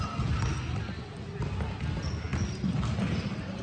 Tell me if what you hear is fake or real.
real